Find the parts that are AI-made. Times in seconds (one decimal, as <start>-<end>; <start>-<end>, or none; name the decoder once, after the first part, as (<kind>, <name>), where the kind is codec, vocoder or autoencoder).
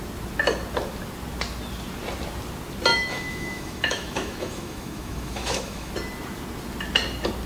2.9-5.9 (autoencoder, DAC-VAE)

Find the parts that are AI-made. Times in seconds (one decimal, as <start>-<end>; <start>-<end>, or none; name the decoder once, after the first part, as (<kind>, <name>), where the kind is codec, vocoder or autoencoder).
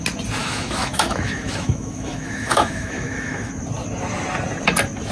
0.4-3.5 (autoencoder, DAC-VAE)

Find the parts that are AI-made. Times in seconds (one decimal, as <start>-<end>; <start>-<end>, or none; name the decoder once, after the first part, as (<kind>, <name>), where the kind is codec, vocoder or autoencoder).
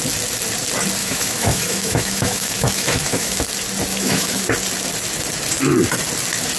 1.0-3.4 (autoencoder, DAC-VAE); 3.9-4.4